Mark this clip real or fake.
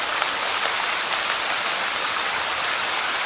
fake